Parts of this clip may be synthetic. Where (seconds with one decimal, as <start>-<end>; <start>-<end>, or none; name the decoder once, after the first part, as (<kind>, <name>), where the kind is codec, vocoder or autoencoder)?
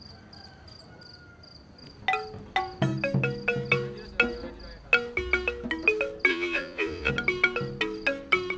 6.3-7.1 (vocoder, Vocos)